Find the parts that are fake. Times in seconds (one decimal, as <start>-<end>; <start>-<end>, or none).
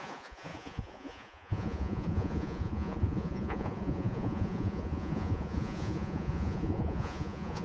0.0-7.6